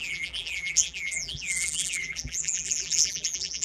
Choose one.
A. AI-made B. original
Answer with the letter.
A